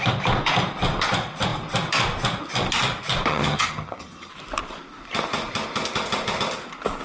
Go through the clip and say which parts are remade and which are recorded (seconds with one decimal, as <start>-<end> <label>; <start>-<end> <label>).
0.0-3.3 recorded; 3.3-4.3 remade; 4.3-7.0 recorded